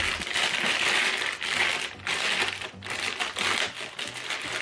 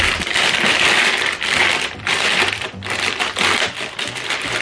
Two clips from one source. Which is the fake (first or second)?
second